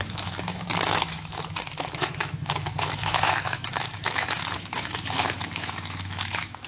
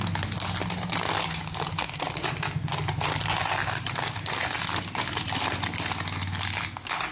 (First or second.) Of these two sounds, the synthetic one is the first